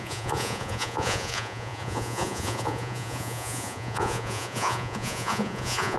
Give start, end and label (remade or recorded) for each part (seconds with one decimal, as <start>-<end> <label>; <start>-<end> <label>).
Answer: 0.0-6.0 remade

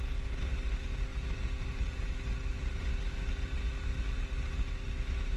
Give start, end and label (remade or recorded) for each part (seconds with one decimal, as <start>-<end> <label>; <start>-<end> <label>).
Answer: 0.0-5.4 recorded

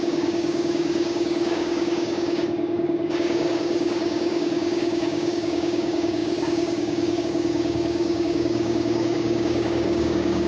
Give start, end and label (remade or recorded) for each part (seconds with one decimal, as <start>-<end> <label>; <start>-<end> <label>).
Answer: 0.0-10.5 remade

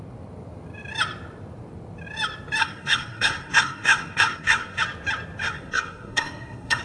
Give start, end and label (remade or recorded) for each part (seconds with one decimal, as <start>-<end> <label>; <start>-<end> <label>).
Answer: 0.0-2.6 recorded; 2.6-4.8 remade; 4.8-5.4 recorded; 5.4-6.8 remade

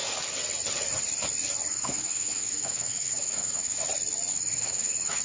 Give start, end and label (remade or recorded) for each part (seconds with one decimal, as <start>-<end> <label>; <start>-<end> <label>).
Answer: 0.0-1.7 recorded; 1.7-3.8 remade; 3.8-4.3 recorded; 4.3-5.2 remade